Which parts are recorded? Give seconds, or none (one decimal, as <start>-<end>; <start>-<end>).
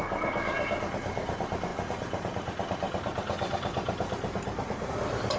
0.0-5.4